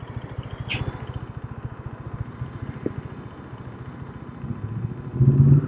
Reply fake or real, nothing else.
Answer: real